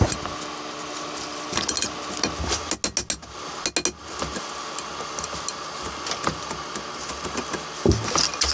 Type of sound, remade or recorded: recorded